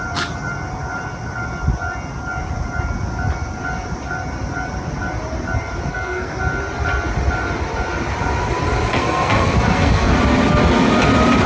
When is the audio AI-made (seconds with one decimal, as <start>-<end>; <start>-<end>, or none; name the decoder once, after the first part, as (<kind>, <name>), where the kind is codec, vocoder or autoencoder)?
5.9-6.4 (codec, SNAC); 8.9-10.2